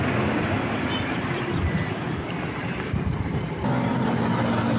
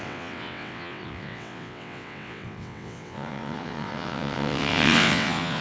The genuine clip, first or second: first